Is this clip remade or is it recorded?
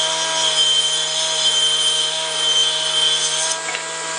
recorded